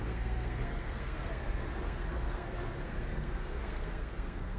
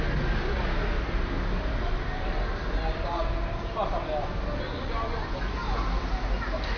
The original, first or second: second